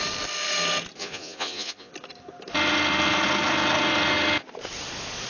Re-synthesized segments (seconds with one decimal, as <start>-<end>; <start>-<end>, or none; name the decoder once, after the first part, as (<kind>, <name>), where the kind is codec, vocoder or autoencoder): 1.0-1.9 (vocoder, Vocos)